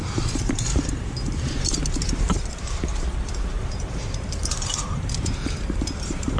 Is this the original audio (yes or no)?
no